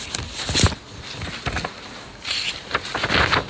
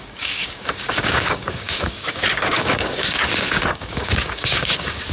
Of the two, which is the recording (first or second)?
first